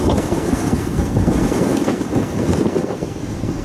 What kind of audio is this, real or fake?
fake